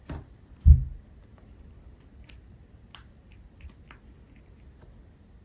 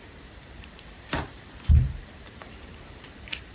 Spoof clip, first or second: second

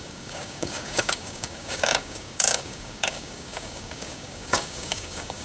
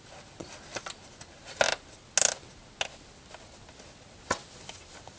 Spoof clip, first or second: first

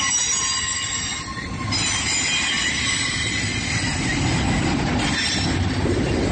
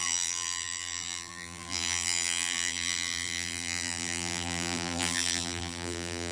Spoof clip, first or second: second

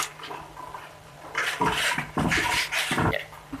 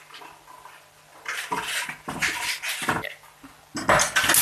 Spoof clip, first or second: first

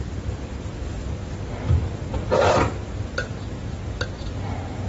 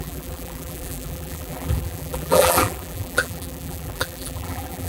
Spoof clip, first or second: second